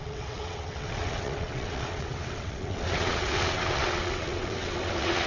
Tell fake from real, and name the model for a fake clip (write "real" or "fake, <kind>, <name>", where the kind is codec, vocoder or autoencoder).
fake, vocoder, WaveNeXt